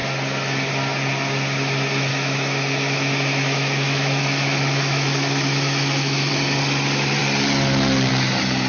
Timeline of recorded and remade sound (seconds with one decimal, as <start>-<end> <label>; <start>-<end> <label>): 0.0-2.1 recorded; 2.1-6.3 remade; 6.3-8.7 recorded